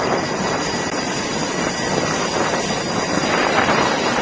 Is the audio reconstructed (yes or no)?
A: no